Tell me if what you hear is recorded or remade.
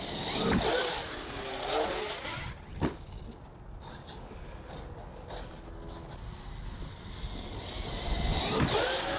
recorded